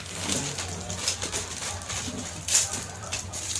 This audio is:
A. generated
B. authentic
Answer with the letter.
B